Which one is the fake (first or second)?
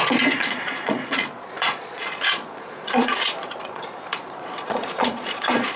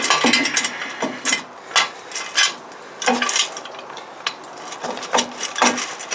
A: first